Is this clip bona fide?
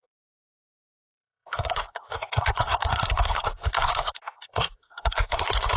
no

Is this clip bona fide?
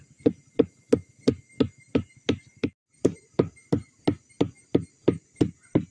yes